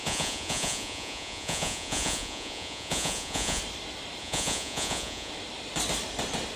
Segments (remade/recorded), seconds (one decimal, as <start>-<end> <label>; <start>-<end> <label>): 0.0-3.6 remade; 3.6-4.2 recorded; 4.2-5.3 remade; 5.3-6.6 recorded